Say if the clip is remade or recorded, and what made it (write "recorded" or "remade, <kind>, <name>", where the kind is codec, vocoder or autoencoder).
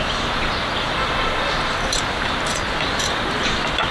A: recorded